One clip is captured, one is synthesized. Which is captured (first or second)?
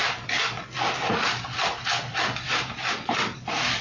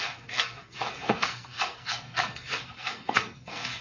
first